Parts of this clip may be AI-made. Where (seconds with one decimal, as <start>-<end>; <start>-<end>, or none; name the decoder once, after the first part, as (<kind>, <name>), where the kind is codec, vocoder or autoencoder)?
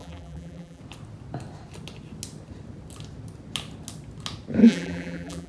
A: 0.0-0.8 (vocoder, BigVGAN v2); 4.6-5.5